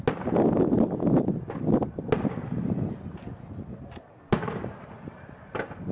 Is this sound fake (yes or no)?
no